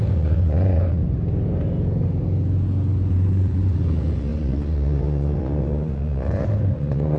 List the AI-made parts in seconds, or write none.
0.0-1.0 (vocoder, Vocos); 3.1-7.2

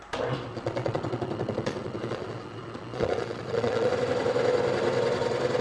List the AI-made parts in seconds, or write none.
0.5-3.9 (vocoder, Vocos)